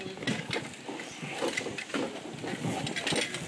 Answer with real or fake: real